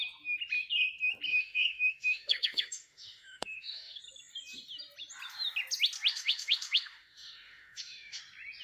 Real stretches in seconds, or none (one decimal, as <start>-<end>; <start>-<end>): 0.0-1.3; 4.0-6.1; 8.2-8.6